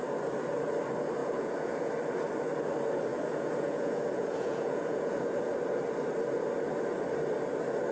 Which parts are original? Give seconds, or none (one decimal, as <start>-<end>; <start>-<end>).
0.0-1.2; 1.9-3.1; 5.5-7.9